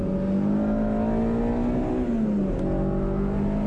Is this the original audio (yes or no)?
yes